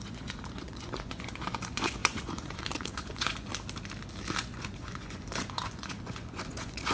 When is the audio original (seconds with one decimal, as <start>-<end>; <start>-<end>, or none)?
3.5-4.4

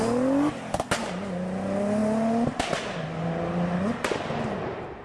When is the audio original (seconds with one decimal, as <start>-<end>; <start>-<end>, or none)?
0.0-5.0

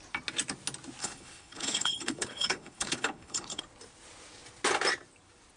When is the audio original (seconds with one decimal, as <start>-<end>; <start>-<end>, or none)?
0.0-1.0; 3.6-5.6

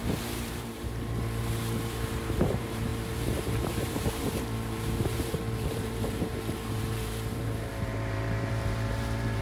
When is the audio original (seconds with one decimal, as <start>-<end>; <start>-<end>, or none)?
none